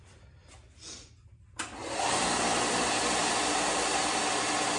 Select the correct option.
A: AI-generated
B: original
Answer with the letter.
B